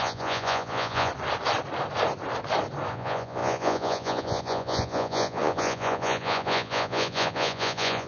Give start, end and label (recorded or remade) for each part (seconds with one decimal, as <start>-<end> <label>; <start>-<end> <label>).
0.0-1.1 remade; 1.1-2.9 recorded; 2.9-8.1 remade